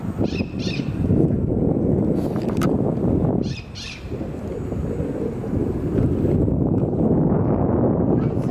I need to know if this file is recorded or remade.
recorded